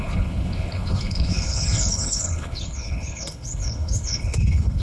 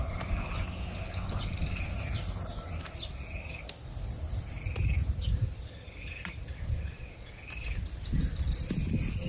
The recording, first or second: second